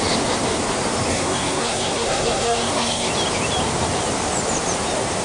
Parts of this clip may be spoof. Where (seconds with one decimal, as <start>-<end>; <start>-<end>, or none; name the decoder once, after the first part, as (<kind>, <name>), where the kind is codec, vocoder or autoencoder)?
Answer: 1.1-3.1 (codec, SNAC)